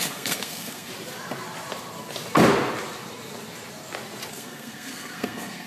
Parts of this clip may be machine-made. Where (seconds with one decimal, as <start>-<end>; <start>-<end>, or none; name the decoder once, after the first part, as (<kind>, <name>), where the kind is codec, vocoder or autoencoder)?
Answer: 0.0-0.9 (codec, SNAC); 4.3-5.7